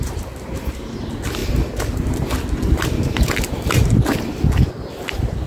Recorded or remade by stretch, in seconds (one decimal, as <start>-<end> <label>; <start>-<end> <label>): 0.0-5.5 recorded